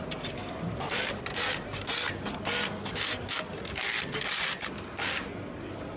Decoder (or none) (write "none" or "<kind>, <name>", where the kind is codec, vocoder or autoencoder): none